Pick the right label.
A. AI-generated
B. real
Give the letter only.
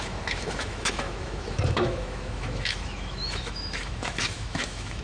A